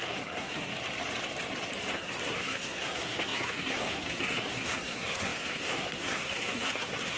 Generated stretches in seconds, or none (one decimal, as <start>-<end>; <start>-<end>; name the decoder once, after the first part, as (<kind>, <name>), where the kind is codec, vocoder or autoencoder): 0.0-0.7 (codec, SNAC); 1.9-7.2